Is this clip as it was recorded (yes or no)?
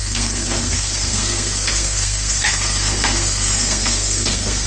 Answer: no